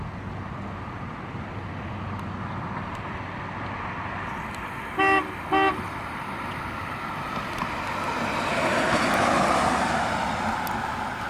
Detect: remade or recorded recorded